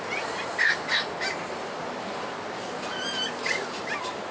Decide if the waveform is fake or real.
real